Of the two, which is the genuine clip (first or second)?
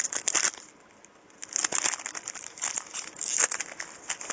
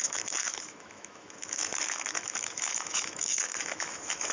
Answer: first